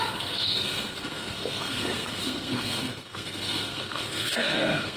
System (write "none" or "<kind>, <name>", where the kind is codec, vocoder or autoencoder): codec, SNAC